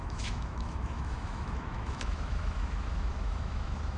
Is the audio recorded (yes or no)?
no